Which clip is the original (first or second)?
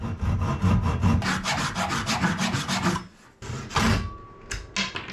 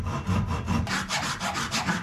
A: first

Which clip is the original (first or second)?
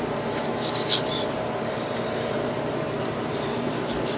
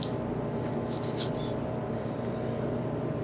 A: second